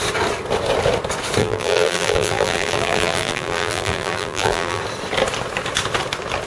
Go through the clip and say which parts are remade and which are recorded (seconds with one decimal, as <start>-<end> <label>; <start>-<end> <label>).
0.0-1.4 recorded; 1.4-4.8 remade; 4.8-6.5 recorded